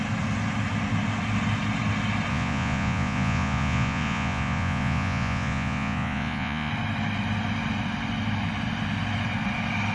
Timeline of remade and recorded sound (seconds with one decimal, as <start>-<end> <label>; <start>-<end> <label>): 0.0-2.3 recorded; 2.3-6.7 remade; 6.7-9.9 recorded